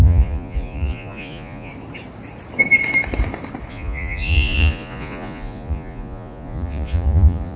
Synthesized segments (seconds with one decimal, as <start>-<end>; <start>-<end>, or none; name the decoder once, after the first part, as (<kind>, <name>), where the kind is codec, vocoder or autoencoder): 0.0-1.7 (vocoder, Vocos); 3.7-7.6